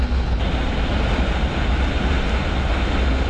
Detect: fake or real real